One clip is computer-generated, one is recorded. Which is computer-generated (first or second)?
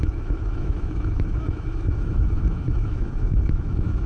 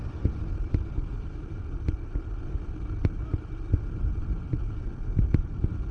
first